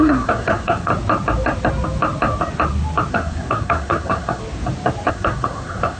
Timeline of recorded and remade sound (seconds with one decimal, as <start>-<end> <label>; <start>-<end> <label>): 0.0-0.9 remade; 0.9-3.1 recorded; 3.1-4.4 remade; 4.4-5.1 recorded; 5.1-6.0 remade